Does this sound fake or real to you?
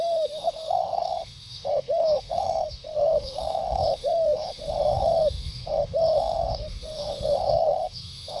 fake